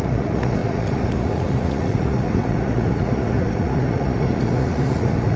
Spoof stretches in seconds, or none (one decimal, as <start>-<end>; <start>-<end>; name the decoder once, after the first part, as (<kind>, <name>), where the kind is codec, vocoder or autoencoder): 0.0-5.4 (vocoder, Vocos)